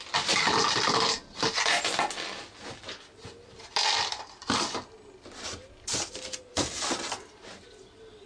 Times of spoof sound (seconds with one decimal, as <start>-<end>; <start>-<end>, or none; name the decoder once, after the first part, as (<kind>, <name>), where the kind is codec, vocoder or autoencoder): none

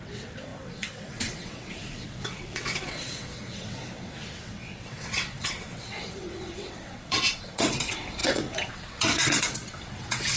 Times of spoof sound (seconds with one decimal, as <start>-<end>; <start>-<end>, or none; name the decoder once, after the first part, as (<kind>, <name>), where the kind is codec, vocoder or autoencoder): 0.0-10.4 (vocoder, WaveNeXt)

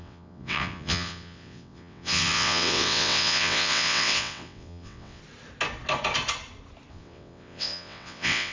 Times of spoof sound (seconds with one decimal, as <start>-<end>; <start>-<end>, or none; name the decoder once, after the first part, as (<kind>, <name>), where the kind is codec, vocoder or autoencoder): 0.0-5.2 (vocoder, WaveNeXt); 6.9-8.5

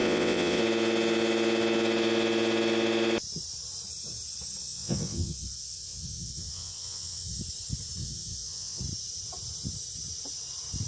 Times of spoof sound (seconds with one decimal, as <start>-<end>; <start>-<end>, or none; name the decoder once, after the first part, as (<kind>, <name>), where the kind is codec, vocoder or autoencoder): 0.0-0.6 (vocoder, WaveNeXt); 4.6-7.4; 8.0-8.8